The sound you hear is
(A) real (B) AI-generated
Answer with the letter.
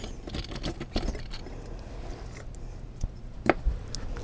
A